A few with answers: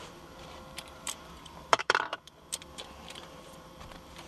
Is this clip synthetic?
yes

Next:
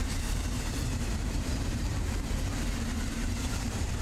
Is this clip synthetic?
yes